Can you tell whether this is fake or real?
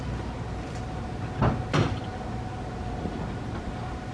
real